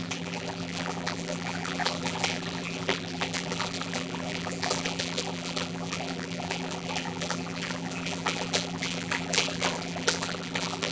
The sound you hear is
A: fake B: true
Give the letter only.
A